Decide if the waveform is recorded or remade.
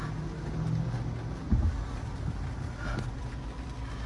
recorded